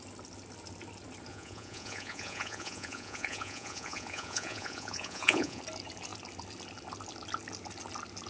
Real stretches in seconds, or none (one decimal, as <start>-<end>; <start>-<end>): 0.0-1.3; 5.6-8.3